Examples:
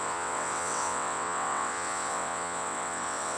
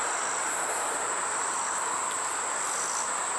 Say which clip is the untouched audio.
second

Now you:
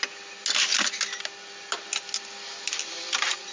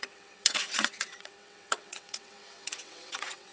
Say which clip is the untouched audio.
first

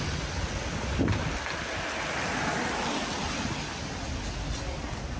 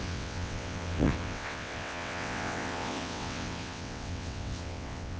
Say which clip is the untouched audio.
first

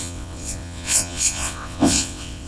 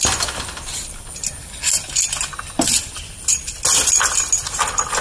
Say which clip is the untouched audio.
second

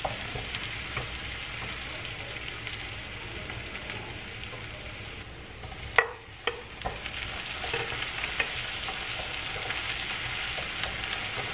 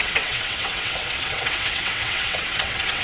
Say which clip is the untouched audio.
first